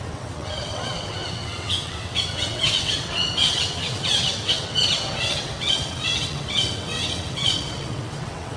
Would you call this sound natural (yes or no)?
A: no